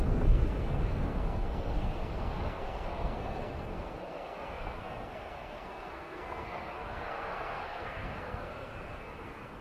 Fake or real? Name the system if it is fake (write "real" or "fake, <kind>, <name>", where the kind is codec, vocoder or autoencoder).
fake, codec, SNAC